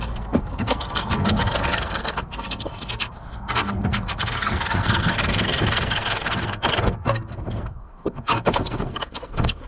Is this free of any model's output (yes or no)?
no